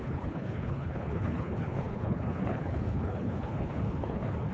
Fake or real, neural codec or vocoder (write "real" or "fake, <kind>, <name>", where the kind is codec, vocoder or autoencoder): fake, codec, HILCodec